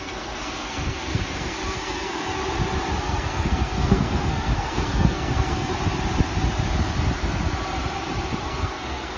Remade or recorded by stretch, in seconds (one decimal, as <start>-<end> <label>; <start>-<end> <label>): 0.0-2.4 remade; 2.4-3.0 recorded; 3.0-5.7 remade; 5.7-8.4 recorded; 8.4-9.2 remade